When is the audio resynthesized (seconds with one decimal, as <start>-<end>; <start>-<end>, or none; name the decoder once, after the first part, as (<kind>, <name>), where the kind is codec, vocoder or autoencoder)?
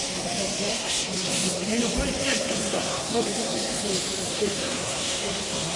0.7-1.8 (codec, SNAC); 2.2-3.9; 4.3-5.8